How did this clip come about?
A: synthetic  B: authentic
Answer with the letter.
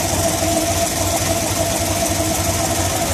B